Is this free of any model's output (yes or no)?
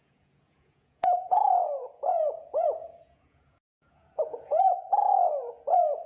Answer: no